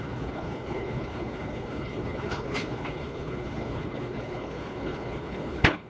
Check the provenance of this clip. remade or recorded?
remade